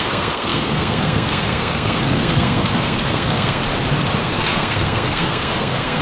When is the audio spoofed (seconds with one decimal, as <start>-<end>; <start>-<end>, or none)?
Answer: 0.0-3.6; 4.2-6.0